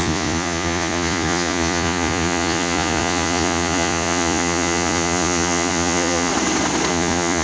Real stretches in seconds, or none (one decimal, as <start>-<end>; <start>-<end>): 6.3-6.9